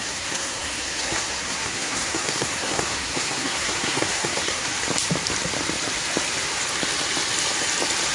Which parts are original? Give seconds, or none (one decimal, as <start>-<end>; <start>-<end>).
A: 4.7-8.1